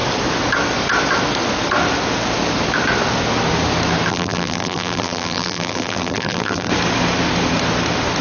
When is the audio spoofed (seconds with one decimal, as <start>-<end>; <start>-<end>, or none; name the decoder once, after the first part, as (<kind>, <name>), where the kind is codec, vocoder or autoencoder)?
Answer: 4.1-6.7 (vocoder, BigVGAN v2)